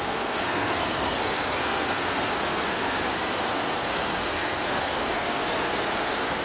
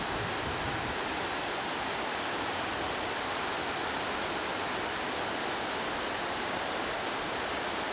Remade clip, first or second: first